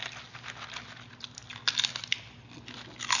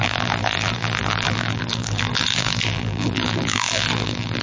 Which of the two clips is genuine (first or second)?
first